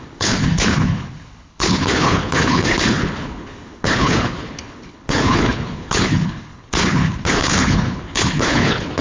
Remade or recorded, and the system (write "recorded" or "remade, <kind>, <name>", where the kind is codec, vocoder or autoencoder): remade, codec, HILCodec